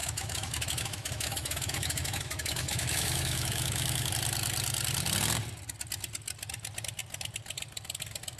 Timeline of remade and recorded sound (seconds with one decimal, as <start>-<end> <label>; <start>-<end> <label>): 0.0-4.1 remade; 4.1-8.4 recorded